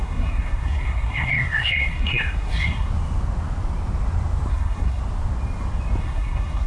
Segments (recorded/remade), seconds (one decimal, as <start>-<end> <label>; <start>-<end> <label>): 0.0-2.9 remade; 2.9-4.5 recorded; 4.5-5.0 remade; 5.0-6.0 recorded; 6.0-6.7 remade